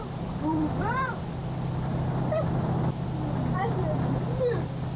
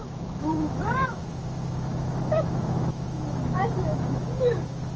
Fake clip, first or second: second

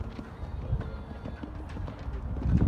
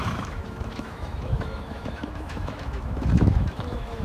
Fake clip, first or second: second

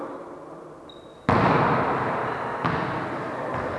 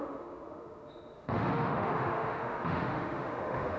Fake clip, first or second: second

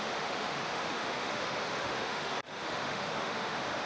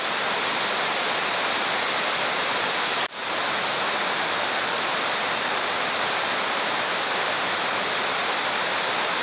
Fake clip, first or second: first